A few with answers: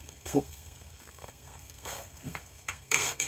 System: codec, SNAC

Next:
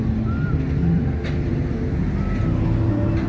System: none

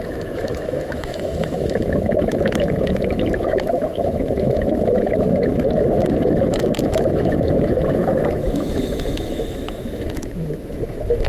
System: autoencoder, DAC-VAE